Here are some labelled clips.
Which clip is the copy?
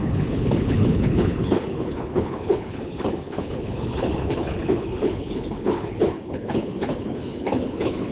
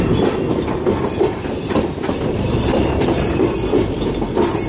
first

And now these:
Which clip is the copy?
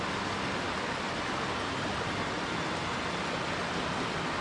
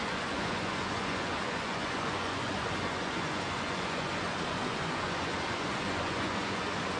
second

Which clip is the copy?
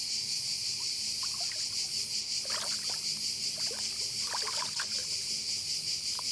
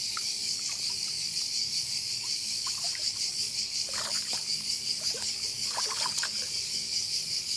second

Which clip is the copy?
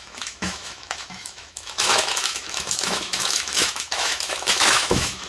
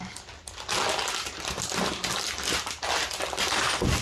first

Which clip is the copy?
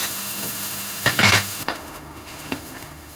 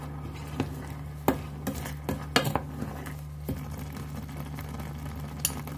first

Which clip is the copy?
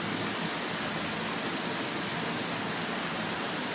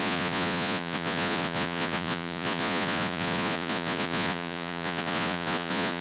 second